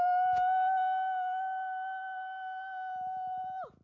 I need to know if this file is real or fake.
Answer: real